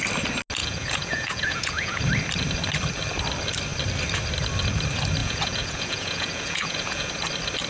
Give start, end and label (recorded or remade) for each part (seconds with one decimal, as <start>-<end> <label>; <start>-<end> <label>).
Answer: 0.0-0.6 recorded; 0.6-2.0 remade; 2.0-5.2 recorded; 5.2-7.1 remade; 7.1-7.7 recorded